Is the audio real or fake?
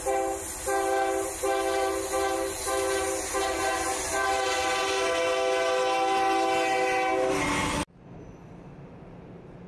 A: real